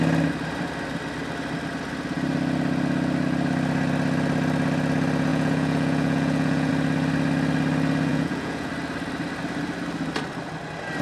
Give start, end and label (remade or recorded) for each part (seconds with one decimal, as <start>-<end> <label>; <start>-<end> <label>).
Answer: 0.0-5.3 recorded; 5.3-6.7 remade; 6.7-8.1 recorded; 8.1-8.7 remade; 8.7-11.0 recorded